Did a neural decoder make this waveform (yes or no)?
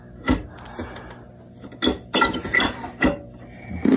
no